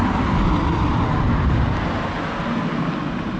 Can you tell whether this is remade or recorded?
recorded